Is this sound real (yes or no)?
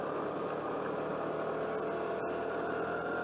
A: yes